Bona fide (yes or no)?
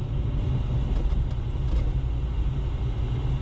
yes